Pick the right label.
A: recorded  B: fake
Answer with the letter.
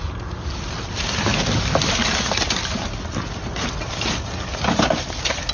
A